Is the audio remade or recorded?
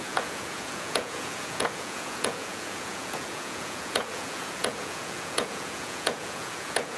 remade